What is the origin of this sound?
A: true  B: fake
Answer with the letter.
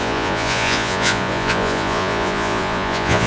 B